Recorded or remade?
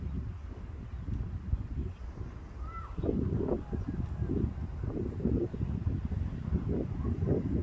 recorded